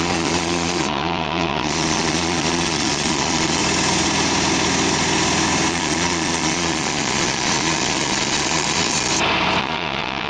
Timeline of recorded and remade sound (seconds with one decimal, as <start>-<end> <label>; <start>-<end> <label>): 0.0-3.6 remade; 3.6-5.7 recorded; 5.7-9.1 remade; 9.1-9.6 recorded; 9.6-10.3 remade